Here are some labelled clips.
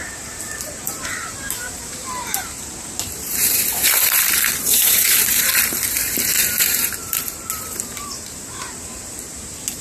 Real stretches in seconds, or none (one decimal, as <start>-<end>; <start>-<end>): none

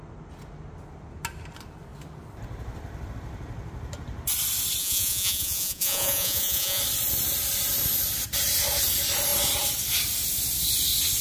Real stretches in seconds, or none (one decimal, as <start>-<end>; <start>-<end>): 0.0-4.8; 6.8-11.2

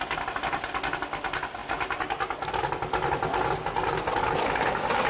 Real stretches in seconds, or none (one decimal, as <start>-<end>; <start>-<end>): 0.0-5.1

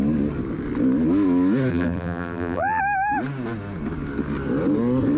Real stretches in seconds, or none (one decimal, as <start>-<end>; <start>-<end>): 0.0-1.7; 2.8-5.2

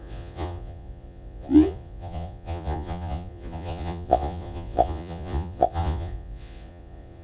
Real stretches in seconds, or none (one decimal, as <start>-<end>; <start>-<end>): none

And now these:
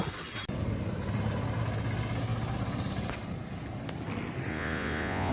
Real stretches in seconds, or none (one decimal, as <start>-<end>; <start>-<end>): 0.0-4.5

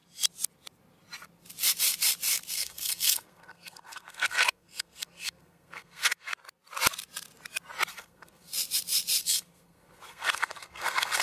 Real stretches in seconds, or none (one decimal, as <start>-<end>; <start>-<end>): 0.0-2.5; 6.3-7.9; 8.5-9.2

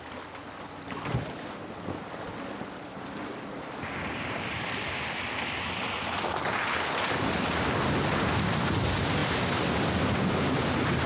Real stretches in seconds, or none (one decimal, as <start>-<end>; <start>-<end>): 0.0-11.1